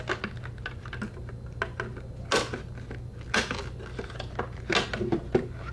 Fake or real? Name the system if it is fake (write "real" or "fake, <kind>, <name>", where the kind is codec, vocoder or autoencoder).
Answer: real